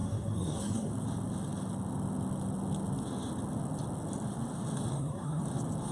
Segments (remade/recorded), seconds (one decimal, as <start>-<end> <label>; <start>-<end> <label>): 0.0-0.9 remade; 0.9-4.9 recorded; 4.9-5.4 remade; 5.4-5.9 recorded